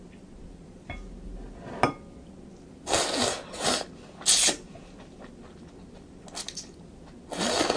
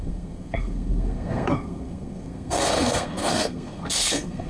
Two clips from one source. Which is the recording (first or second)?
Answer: first